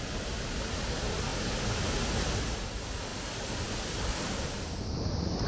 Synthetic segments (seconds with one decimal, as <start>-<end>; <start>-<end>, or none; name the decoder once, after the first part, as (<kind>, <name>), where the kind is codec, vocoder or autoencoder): 3.1-4.2 (vocoder, BigVGAN v2)